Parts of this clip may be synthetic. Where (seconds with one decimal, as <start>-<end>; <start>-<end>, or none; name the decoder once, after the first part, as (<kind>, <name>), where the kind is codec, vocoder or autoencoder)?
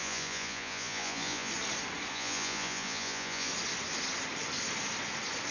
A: 0.0-1.5 (vocoder, Vocos); 2.1-3.5